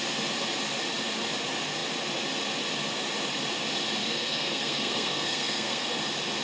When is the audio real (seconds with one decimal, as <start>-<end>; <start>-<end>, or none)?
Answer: 0.0-4.0; 6.0-6.4